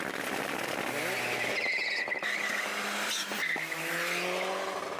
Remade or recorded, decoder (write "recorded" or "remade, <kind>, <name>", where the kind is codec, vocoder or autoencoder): recorded